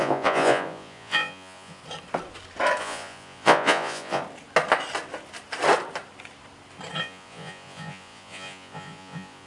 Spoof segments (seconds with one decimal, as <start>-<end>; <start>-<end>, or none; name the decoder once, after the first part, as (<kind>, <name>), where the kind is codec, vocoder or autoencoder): 0.0-1.8 (vocoder, Vocos); 2.8-4.2; 7.0-9.5